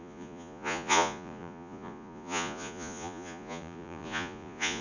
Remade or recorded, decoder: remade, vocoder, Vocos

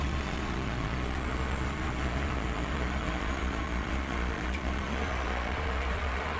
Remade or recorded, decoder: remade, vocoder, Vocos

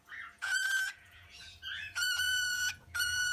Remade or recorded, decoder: remade, vocoder, Vocos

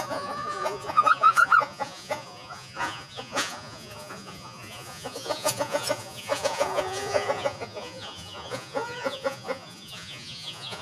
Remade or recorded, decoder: remade, vocoder, Vocos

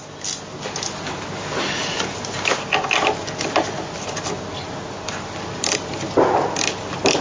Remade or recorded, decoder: recorded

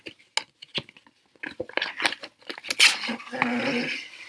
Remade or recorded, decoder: recorded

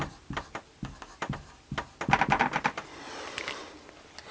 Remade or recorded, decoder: recorded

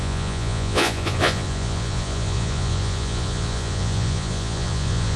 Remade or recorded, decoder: remade, vocoder, Vocos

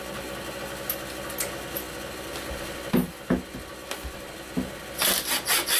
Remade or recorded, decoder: recorded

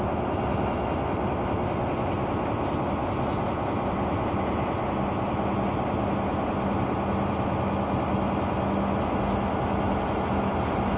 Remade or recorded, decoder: recorded